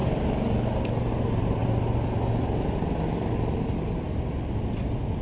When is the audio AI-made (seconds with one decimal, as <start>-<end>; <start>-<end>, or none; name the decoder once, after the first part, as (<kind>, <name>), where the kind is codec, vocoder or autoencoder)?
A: none